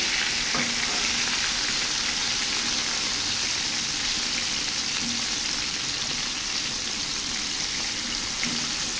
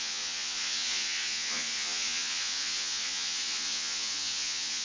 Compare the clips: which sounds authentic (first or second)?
first